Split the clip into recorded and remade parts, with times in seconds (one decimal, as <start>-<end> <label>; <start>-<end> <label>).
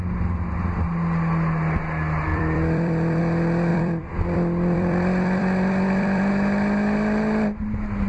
0.0-2.3 recorded; 2.3-3.2 remade; 3.2-3.7 recorded; 3.7-6.3 remade; 6.3-8.1 recorded